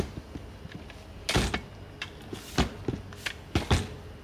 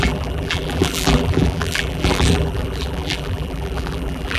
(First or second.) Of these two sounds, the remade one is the second